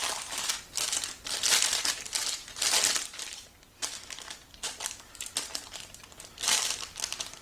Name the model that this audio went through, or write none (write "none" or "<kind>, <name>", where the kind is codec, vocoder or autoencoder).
none